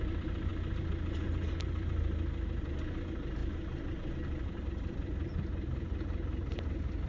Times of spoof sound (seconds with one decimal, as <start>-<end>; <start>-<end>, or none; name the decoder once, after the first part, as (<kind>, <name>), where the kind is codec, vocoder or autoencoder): none